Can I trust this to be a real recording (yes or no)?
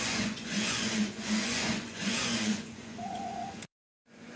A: no